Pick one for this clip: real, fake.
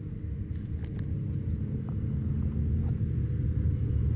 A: real